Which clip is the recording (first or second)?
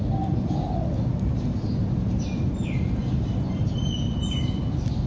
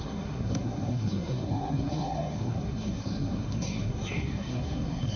first